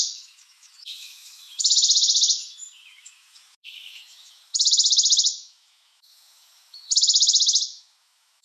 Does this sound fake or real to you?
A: fake